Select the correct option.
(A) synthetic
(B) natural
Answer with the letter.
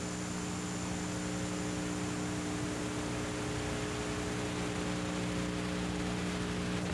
B